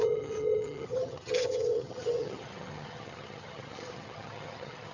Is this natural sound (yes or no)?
no